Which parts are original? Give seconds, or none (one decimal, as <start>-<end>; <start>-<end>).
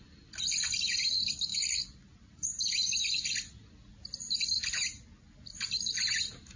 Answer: 0.0-6.6